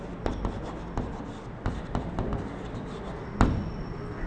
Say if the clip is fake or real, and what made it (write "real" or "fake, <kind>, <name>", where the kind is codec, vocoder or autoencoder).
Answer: real